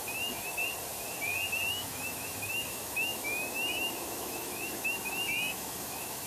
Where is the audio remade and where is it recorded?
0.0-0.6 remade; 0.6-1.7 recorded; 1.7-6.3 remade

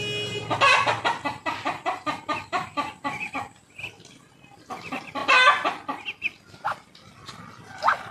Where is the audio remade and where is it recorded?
0.0-8.1 recorded

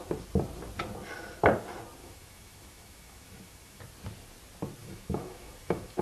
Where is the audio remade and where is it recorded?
0.0-2.0 recorded; 2.0-3.8 remade; 3.8-4.8 recorded; 4.8-6.0 remade

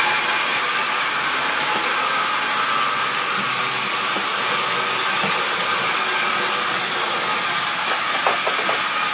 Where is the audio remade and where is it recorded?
0.0-9.1 recorded

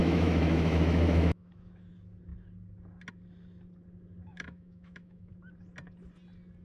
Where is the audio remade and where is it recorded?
0.0-1.9 remade; 1.9-4.3 recorded; 4.3-5.3 remade; 5.3-6.6 recorded

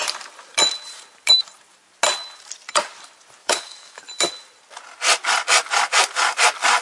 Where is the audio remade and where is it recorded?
0.0-3.4 recorded; 3.4-4.0 remade; 4.0-6.8 recorded